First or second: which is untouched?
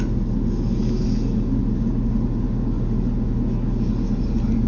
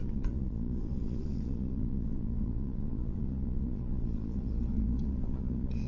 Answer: first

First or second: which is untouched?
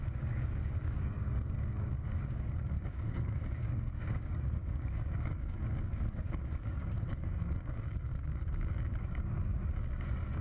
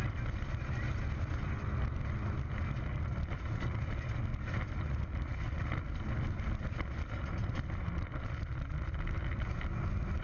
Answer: second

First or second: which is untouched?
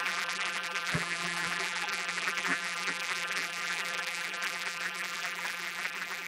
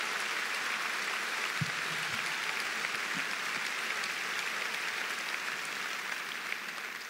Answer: second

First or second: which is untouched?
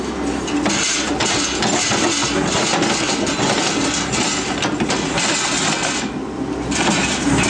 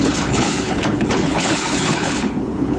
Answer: first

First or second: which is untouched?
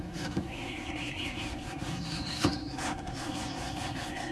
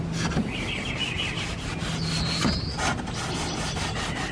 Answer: second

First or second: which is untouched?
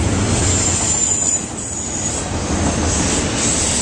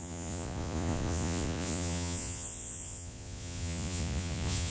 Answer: first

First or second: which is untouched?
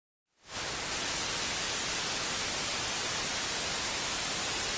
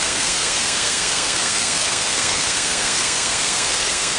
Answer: first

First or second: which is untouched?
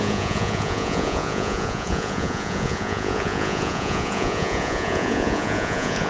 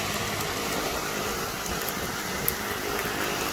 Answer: second